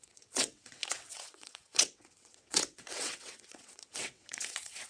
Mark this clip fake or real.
fake